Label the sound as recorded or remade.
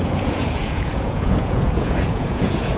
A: remade